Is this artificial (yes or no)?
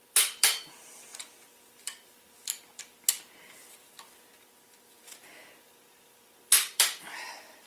yes